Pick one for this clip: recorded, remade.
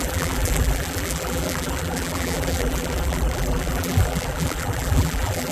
remade